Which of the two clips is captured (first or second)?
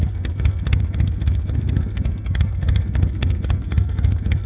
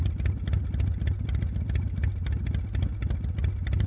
second